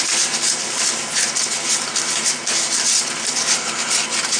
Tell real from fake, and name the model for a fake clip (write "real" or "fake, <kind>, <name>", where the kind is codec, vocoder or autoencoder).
real